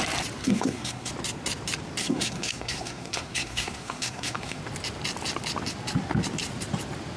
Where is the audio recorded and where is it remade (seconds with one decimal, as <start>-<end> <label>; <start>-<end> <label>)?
0.0-0.4 recorded; 0.4-1.1 remade; 1.1-2.0 recorded; 2.0-4.6 remade; 4.6-7.2 recorded